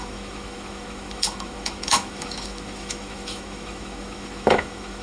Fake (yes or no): yes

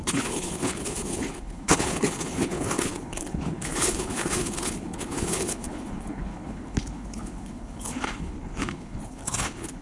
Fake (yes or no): yes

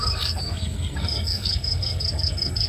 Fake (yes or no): yes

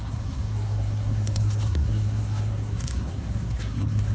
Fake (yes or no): yes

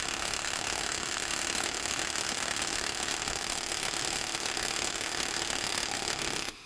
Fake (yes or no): yes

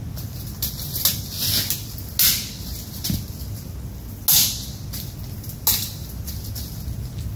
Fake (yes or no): no